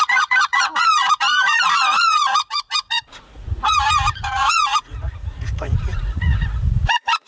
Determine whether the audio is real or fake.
fake